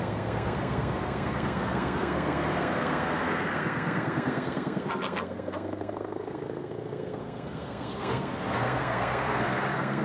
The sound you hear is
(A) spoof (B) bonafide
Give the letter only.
A